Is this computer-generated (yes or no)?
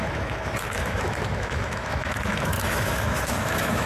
yes